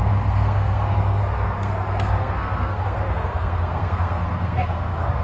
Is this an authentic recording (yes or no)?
no